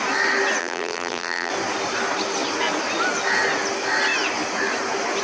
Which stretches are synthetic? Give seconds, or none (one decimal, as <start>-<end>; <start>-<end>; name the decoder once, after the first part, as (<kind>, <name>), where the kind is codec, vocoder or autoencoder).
0.6-1.5 (vocoder, BigVGAN v2)